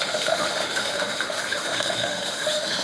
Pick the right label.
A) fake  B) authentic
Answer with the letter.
A